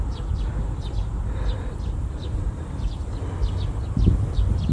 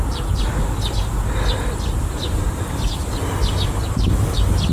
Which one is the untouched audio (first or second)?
second